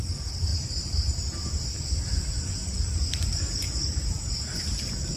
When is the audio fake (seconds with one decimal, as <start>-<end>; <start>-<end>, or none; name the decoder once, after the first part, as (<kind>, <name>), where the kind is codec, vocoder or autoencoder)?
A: 0.5-1.3 (vocoder, BigVGAN v2)